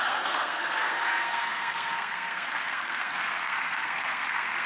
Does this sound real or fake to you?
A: fake